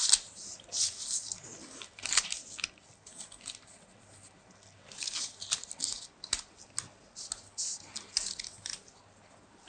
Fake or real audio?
real